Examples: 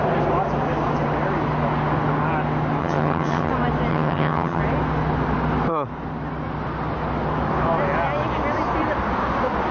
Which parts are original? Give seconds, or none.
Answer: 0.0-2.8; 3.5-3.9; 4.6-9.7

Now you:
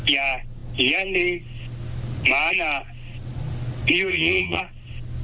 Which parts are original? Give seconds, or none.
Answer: 0.0-4.1; 4.6-5.2

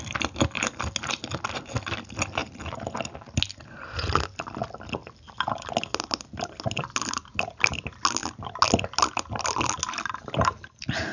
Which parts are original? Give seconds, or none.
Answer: 0.0-11.1